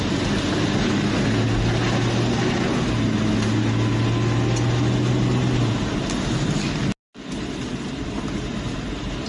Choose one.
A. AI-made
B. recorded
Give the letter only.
B